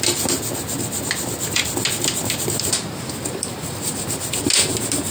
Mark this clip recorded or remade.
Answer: recorded